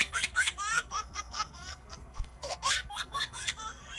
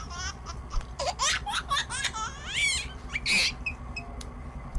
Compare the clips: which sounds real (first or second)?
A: second